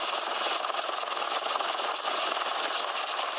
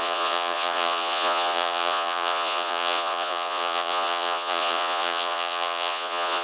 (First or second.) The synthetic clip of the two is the second